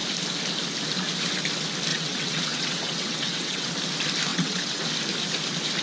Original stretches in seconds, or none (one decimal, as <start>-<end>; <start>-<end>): 0.0-1.9; 3.7-4.3; 4.8-5.8